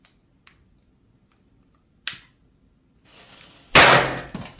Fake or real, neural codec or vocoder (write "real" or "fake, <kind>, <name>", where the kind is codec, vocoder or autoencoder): real